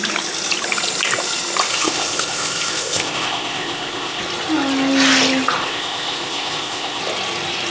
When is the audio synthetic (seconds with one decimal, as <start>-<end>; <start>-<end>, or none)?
1.7-4.2; 5.6-7.0